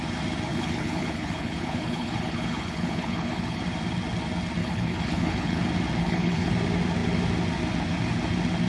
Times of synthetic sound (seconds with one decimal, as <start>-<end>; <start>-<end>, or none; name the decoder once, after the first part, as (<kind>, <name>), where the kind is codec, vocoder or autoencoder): 0.5-3.6 (codec, HILCodec); 4.6-5.6; 6.0-6.5